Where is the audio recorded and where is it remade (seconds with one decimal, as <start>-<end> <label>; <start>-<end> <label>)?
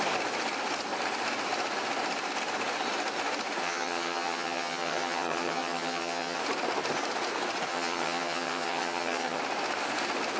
0.0-3.6 recorded; 3.6-6.4 remade; 6.4-7.7 recorded; 7.7-9.4 remade; 9.4-10.4 recorded